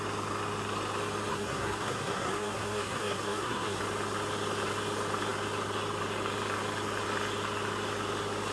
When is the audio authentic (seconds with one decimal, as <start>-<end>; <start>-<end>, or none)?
0.0-1.3; 3.8-8.5